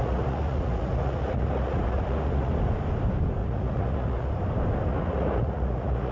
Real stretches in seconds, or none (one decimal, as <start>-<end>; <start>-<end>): 2.5-3.4; 4.3-4.9